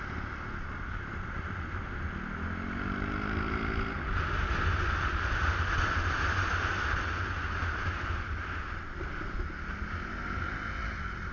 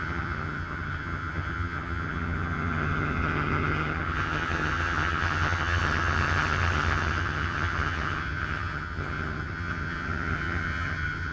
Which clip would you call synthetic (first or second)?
second